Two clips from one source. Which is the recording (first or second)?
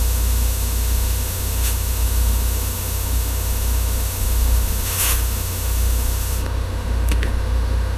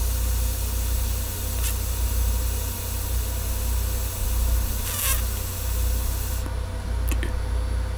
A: second